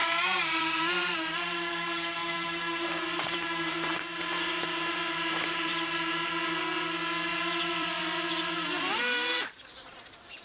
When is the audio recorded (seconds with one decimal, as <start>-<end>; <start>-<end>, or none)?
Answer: 1.3-2.2; 6.3-7.3